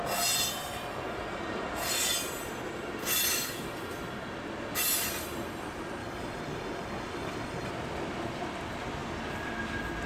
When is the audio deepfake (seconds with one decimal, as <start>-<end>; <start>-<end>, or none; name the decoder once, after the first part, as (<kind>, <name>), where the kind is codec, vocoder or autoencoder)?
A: 6.0-7.7 (codec, DAC)